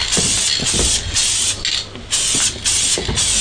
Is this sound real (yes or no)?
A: yes